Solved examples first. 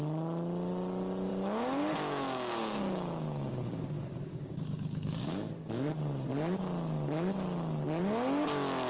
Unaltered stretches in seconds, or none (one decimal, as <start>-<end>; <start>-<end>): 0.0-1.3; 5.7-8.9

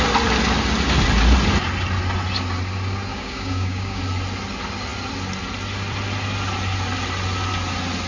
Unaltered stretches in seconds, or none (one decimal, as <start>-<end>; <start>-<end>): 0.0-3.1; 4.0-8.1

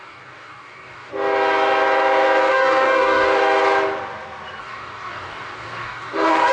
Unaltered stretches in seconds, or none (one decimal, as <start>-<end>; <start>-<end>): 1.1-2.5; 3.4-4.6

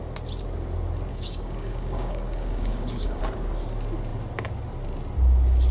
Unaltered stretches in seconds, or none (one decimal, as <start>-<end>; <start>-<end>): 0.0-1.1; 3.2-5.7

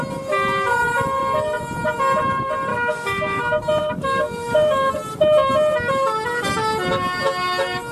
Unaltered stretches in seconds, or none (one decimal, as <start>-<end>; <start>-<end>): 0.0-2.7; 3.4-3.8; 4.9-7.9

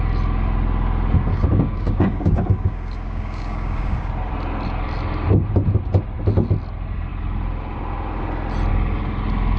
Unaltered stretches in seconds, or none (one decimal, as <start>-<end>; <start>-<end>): 0.0-1.3; 4.1-9.6

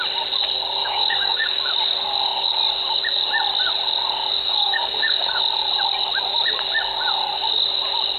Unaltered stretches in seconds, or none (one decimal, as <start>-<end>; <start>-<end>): 0.0-0.8; 1.7-4.4; 5.4-8.2